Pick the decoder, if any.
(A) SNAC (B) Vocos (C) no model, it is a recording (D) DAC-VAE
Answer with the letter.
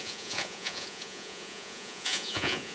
B